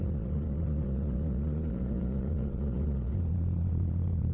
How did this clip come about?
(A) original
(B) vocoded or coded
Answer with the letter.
B